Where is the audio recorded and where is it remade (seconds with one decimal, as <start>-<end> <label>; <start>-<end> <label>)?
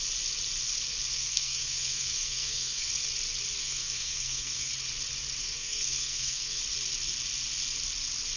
0.0-1.1 recorded; 1.1-2.9 remade; 2.9-3.6 recorded; 3.6-4.7 remade; 4.7-5.4 recorded; 5.4-6.6 remade; 6.6-8.4 recorded